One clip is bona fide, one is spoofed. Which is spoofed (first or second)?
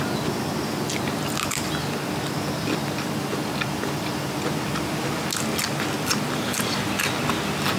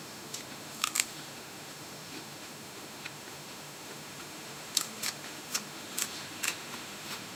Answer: second